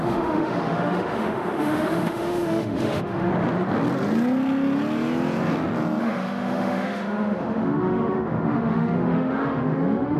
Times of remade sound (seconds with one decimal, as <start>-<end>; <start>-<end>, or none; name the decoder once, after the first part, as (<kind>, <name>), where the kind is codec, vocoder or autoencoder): 0.0-3.3 (autoencoder, DAC-VAE); 6.0-10.2